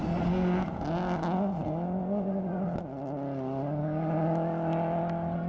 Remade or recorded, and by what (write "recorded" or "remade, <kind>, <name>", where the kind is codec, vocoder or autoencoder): recorded